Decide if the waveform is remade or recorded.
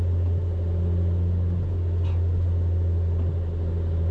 recorded